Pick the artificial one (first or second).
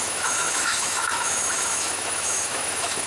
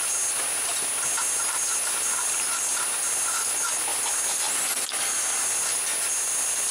first